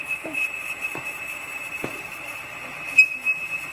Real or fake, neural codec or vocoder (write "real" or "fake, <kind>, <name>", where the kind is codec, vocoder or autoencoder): real